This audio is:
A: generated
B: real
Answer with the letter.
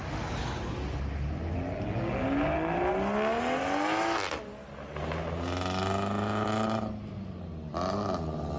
B